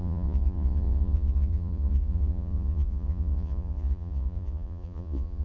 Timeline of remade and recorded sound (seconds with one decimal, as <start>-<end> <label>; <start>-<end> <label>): 0.0-5.4 remade